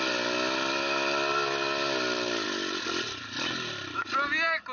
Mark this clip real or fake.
real